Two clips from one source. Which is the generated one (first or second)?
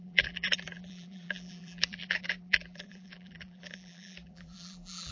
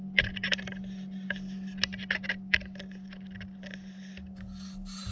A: first